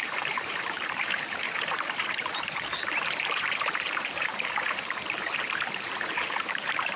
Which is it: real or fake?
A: fake